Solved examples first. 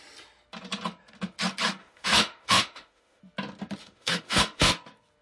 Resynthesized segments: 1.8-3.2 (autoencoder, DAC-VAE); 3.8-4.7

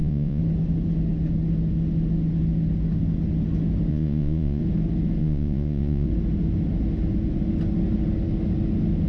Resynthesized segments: 0.0-0.4 (vocoder, Vocos); 3.9-4.6; 5.2-6.1

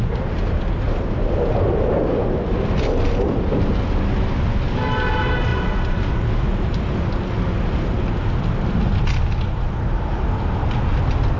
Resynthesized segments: none

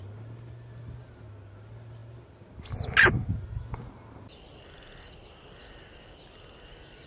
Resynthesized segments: none

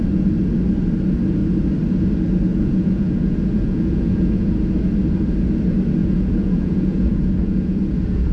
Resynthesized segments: 2.5-4.5 (vocoder, Vocos); 6.0-8.3